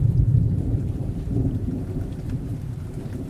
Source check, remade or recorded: remade